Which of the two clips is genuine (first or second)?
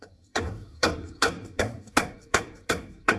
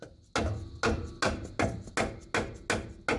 second